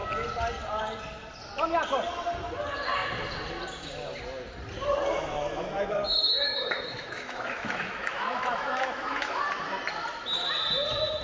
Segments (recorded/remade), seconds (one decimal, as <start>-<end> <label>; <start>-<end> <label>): 0.0-5.1 recorded; 5.1-9.4 remade; 9.4-11.2 recorded